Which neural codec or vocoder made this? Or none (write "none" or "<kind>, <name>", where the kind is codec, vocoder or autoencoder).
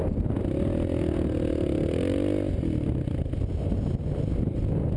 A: none